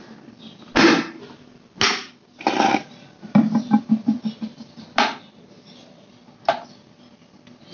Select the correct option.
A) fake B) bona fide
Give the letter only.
B